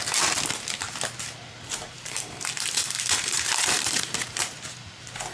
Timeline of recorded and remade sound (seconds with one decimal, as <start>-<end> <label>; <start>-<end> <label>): 0.0-1.9 recorded; 1.9-5.3 remade